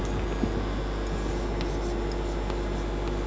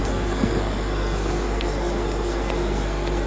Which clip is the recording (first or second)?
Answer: first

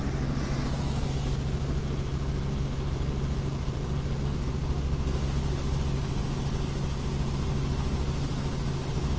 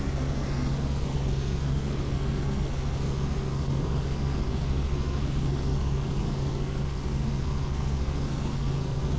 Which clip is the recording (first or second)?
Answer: first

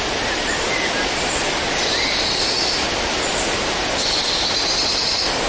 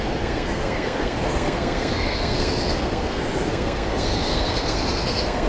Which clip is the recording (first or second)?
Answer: first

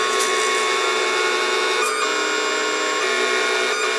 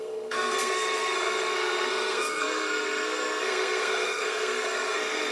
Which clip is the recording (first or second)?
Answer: first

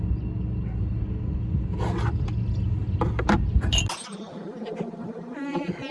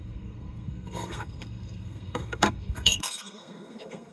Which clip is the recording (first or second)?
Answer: first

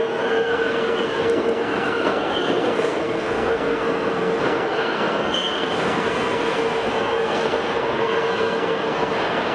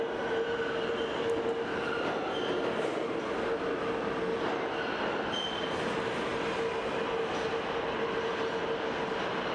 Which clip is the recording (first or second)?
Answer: second